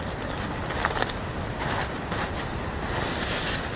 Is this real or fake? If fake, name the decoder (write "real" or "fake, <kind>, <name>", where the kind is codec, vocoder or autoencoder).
real